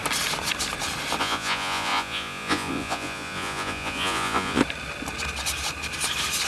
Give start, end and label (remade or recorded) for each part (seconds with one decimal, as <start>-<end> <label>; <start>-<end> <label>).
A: 0.0-1.2 recorded; 1.2-4.6 remade; 4.6-6.5 recorded